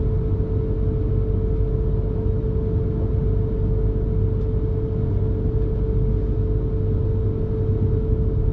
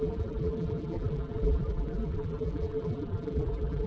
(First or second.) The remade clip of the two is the second